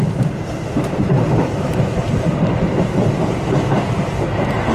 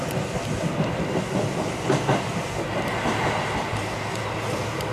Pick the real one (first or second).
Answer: second